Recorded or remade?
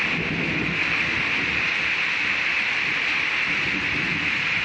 remade